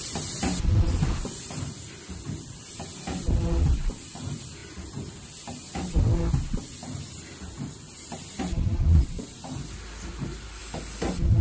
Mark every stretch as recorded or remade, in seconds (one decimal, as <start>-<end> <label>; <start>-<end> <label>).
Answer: 0.0-11.4 recorded